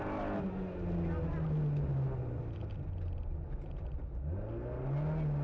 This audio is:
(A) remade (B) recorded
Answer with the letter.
B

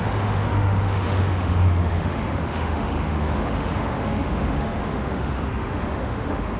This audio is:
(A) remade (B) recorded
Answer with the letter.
A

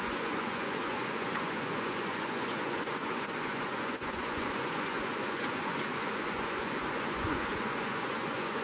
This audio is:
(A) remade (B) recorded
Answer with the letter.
A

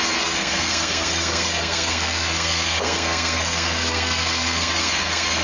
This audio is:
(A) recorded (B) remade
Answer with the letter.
B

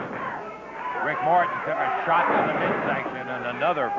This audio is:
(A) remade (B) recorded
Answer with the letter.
B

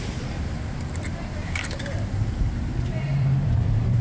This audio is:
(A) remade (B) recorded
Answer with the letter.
A